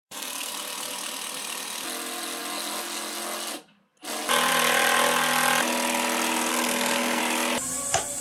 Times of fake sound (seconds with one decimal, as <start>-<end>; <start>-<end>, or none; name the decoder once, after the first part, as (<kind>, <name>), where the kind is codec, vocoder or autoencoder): 0.0-0.5 (codec, SNAC); 6.5-7.2